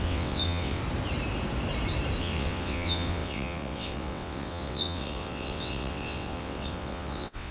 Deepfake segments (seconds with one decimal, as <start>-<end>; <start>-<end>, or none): 0.0-0.8; 2.2-7.5